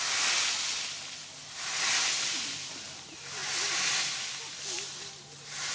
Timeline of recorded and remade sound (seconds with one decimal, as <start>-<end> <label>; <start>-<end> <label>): 0.0-5.7 recorded